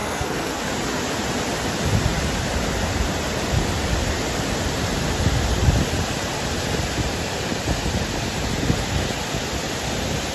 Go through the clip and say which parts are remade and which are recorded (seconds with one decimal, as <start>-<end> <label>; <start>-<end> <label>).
0.0-0.6 remade; 0.6-10.3 recorded